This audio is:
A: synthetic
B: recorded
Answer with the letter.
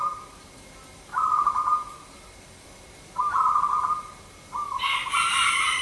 B